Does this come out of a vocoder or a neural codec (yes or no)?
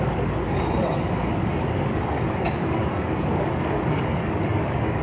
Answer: yes